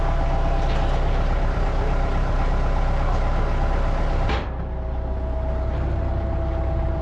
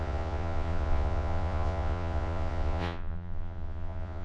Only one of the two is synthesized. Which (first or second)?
second